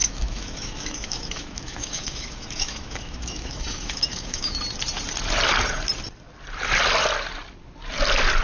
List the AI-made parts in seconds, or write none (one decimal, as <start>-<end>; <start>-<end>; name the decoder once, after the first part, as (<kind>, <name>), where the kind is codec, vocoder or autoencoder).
0.0-4.6 (autoencoder, DAC-VAE)